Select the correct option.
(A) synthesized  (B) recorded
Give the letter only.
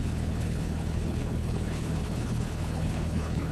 A